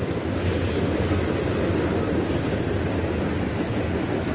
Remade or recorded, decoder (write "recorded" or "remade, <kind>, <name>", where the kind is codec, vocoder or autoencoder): recorded